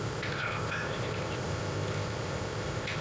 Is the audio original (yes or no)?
no